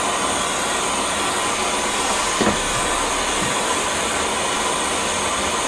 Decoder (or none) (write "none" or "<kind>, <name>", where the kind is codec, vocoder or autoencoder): none